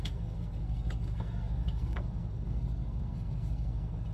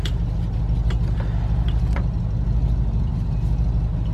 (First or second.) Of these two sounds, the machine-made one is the first